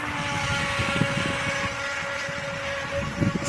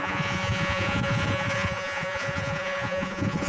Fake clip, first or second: second